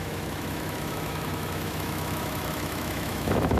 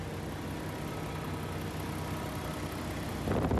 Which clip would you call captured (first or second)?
second